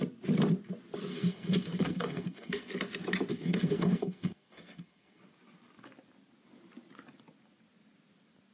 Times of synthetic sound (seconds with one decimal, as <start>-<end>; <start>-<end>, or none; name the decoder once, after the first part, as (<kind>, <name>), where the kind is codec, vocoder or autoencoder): 1.1-2.8 (codec, SNAC); 3.3-5.2